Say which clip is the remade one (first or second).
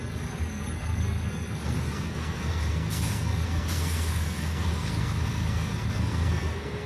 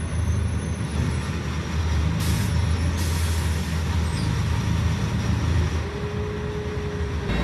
first